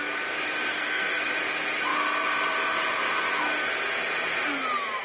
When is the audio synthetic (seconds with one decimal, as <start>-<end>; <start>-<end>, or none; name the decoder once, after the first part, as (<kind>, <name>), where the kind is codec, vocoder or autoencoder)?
0.7-1.3 (codec, SNAC)